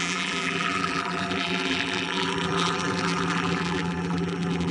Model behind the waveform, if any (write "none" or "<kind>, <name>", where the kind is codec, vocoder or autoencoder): vocoder, BigVGAN v2